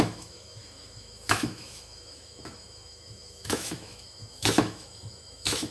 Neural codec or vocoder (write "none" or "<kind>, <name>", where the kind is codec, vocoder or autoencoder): autoencoder, DAC-VAE